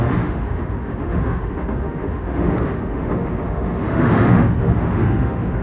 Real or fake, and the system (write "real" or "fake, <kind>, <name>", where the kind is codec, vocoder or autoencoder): fake, autoencoder, DAC-VAE